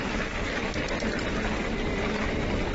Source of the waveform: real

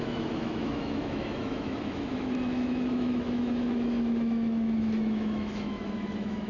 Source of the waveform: fake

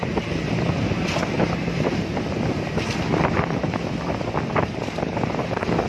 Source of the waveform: real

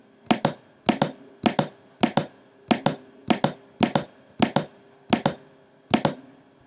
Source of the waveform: real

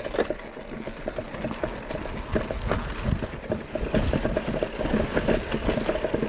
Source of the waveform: real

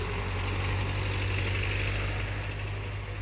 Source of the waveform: real